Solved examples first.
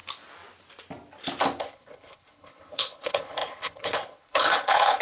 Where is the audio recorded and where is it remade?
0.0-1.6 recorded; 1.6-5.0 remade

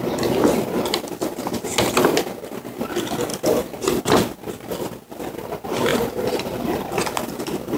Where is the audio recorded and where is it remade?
0.0-5.9 recorded; 5.9-7.2 remade; 7.2-7.8 recorded

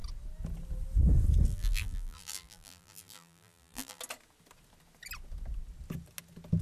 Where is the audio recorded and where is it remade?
0.0-1.5 recorded; 1.5-4.0 remade; 4.0-6.6 recorded

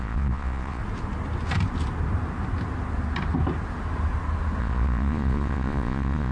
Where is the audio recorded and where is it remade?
0.0-0.8 remade; 0.8-4.6 recorded; 4.6-6.3 remade

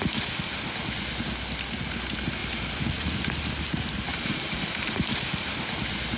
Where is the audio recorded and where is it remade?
0.0-2.4 recorded; 2.4-3.3 remade; 3.3-4.1 recorded; 4.1-5.5 remade; 5.5-6.2 recorded